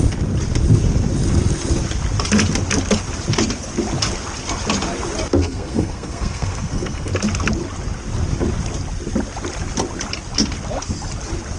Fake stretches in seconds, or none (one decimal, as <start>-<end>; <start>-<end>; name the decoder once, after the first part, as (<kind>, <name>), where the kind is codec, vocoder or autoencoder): 5.4-7.1 (codec, SNAC)